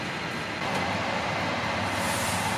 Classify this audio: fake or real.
real